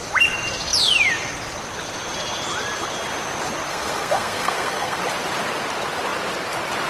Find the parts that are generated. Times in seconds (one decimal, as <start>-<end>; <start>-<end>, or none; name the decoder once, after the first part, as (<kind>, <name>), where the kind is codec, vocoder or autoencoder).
3.7-5.0 (codec, SNAC)